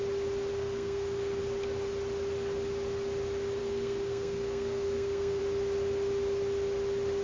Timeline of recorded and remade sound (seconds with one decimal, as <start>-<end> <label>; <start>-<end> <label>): 0.0-0.5 recorded; 0.5-1.4 remade; 1.4-3.6 recorded; 3.6-5.4 remade; 5.4-7.2 recorded